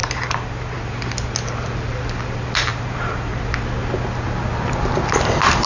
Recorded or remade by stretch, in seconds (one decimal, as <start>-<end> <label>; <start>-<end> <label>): 0.0-0.8 remade; 0.8-2.7 recorded; 2.7-3.4 remade; 3.4-5.7 recorded